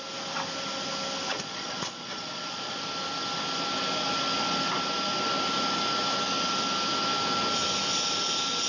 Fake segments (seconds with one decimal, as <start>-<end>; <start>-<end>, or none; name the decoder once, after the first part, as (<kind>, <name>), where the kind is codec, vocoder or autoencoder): 1.3-2.8 (vocoder, Vocos)